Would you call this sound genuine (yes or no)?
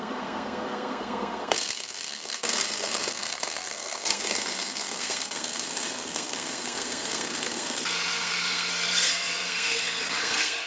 no